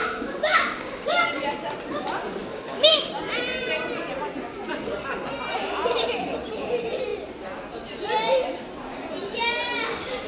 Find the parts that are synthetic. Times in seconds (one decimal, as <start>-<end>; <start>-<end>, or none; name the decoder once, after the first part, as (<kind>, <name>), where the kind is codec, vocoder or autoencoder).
0.0-1.2 (codec, DAC); 2.4-3.1